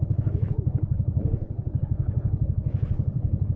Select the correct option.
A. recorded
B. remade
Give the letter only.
B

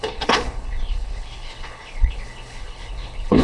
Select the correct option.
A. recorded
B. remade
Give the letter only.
B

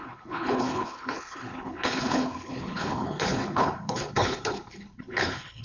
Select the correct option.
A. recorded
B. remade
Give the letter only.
B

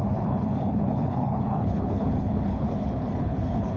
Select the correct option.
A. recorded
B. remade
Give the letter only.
B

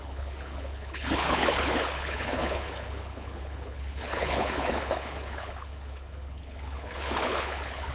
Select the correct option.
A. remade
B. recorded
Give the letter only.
A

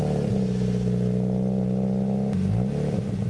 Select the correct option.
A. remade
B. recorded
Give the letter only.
B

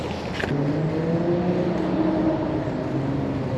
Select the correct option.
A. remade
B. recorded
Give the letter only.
B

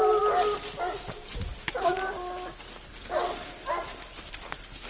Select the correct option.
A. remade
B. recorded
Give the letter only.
B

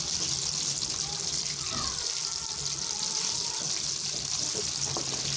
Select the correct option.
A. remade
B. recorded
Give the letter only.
B